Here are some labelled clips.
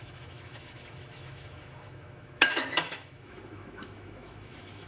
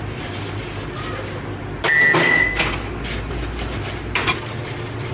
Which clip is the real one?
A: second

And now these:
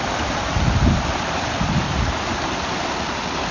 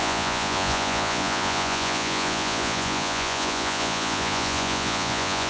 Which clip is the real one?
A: first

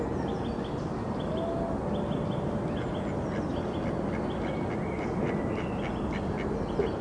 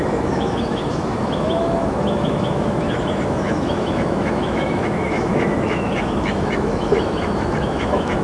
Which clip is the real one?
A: first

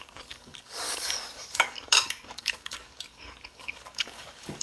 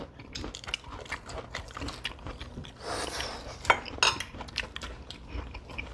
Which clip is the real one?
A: second